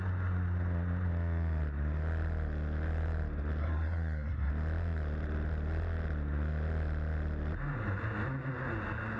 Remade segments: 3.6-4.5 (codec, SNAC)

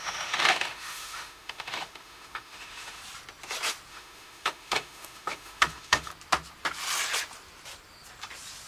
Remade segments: 0.0-3.0 (autoencoder, DAC-VAE); 3.9-6.1

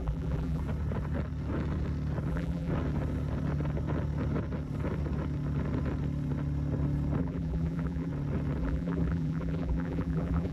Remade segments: 0.0-0.6 (vocoder, BigVGAN v2); 2.3-2.7; 7.2-8.1; 8.6-10.5